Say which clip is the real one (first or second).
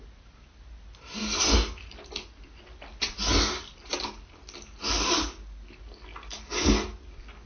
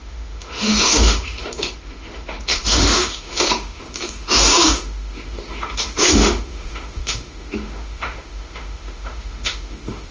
first